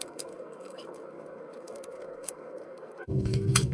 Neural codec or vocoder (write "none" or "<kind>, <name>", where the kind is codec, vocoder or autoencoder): codec, SNAC